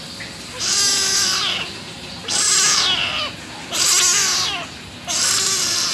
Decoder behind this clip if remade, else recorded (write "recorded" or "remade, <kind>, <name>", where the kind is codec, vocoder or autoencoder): recorded